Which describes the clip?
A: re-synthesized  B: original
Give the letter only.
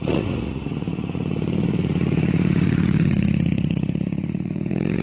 A